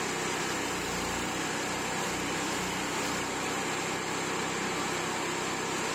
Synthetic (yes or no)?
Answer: no